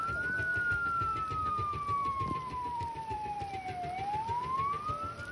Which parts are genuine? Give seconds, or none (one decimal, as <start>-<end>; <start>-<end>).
0.0-2.0; 3.5-5.3